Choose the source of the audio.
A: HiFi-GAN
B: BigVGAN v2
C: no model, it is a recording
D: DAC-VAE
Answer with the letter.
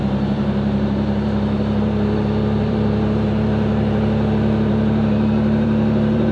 B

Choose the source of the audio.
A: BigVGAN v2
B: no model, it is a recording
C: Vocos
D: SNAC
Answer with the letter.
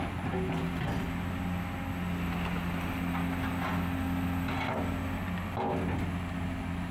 B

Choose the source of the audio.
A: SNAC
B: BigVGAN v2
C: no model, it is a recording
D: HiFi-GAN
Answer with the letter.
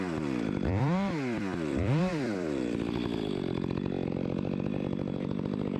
B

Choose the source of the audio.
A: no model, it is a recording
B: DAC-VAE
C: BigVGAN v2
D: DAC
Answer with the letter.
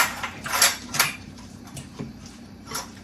C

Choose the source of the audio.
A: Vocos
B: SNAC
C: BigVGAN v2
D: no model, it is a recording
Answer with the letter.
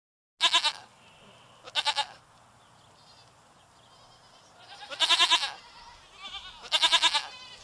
D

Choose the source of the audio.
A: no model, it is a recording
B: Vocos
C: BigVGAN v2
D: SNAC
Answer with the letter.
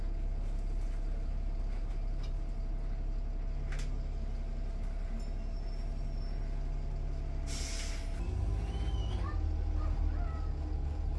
A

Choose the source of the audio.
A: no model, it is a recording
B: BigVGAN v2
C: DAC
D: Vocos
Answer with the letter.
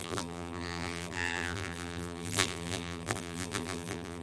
B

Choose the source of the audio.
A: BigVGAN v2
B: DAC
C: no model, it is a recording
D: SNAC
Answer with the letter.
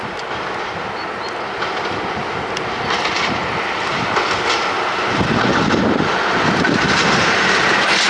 C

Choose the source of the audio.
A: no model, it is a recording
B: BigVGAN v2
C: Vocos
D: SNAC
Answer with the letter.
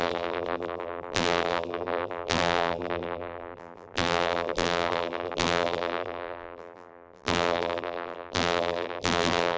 B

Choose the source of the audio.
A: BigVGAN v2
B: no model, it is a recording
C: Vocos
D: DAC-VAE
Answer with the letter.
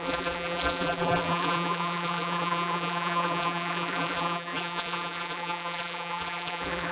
A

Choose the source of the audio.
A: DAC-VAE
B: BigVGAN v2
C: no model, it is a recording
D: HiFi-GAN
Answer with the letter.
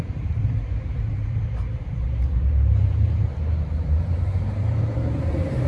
B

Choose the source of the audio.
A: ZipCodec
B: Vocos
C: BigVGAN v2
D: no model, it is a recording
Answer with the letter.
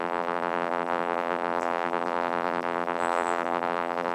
C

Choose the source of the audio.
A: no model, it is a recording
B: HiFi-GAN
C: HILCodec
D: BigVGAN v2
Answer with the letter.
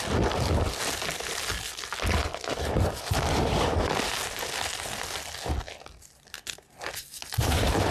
A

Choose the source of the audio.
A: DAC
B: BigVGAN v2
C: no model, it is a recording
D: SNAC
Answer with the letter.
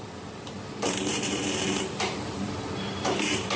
B